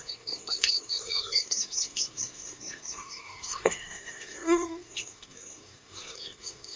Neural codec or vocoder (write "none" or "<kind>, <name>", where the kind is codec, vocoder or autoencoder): codec, SNAC